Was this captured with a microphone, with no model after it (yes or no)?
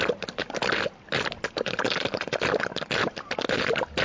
yes